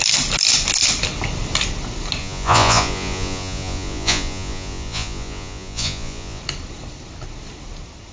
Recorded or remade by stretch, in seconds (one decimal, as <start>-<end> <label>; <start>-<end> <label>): 0.0-2.2 recorded; 2.2-6.4 remade; 6.4-8.1 recorded